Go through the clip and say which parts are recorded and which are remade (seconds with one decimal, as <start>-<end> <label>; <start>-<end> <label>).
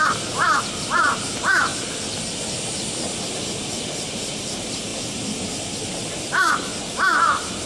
0.0-1.7 remade; 1.7-3.2 recorded; 3.2-4.9 remade; 4.9-5.8 recorded; 5.8-6.7 remade; 6.7-7.7 recorded